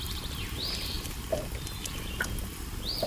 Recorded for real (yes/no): yes